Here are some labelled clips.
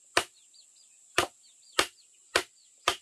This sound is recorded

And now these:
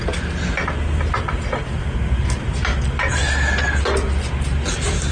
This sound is recorded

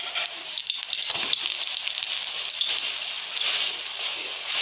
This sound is recorded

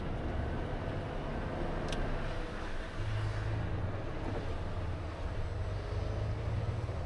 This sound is recorded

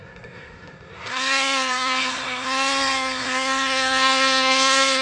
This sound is remade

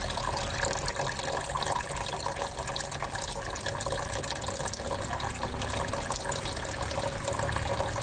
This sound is recorded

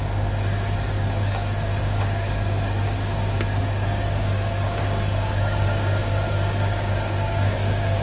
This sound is remade